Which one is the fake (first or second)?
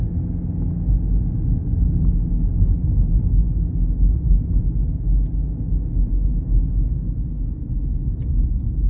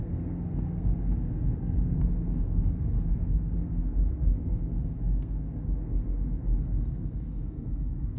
second